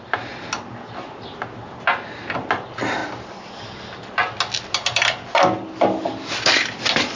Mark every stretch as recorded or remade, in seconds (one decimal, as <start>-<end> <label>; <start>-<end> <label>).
0.0-7.2 recorded